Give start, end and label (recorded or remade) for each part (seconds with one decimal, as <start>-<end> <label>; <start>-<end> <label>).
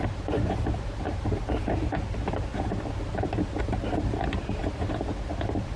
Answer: 0.0-5.8 recorded